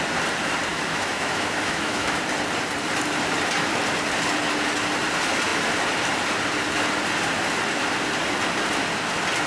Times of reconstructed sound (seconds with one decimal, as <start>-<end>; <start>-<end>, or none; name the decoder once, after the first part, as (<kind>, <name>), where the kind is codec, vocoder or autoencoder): 0.7-2.2 (autoencoder, DAC-VAE)